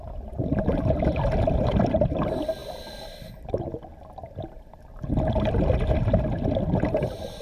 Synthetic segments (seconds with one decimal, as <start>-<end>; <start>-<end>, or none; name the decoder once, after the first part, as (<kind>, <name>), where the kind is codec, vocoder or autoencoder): 1.2-1.8 (vocoder, BigVGAN v2)